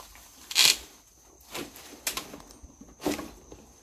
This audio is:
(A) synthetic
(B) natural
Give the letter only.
B